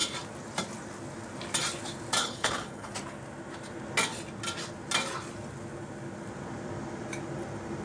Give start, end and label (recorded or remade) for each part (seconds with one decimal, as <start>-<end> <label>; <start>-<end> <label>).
0.0-2.2 recorded; 2.2-2.9 remade; 2.9-7.8 recorded